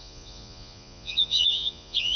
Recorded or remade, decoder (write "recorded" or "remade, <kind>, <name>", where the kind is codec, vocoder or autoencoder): remade, vocoder, Vocos